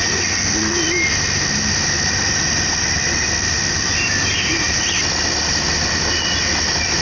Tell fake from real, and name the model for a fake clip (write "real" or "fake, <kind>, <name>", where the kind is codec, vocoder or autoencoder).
real